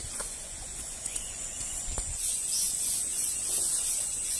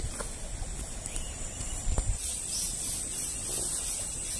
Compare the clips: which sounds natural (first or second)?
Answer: second